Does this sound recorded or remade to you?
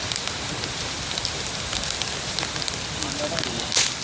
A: recorded